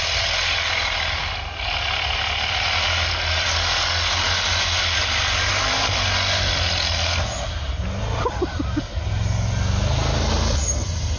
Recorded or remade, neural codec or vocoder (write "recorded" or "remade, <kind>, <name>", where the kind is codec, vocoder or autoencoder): recorded